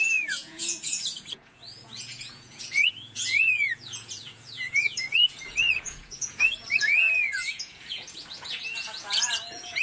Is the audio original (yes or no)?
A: no